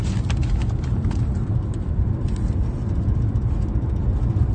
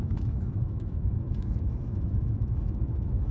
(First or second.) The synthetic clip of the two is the second